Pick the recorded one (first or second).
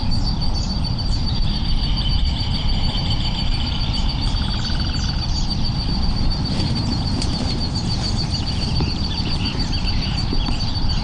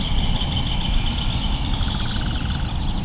second